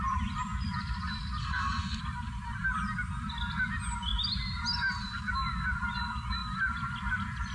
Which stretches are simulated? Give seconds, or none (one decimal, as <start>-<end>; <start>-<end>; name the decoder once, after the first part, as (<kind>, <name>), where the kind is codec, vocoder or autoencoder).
1.4-2.0 (codec, SNAC)